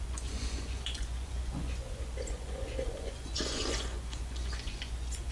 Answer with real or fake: fake